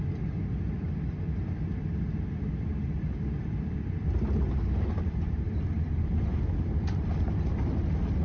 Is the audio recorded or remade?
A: remade